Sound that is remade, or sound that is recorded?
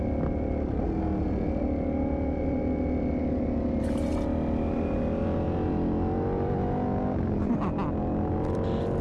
recorded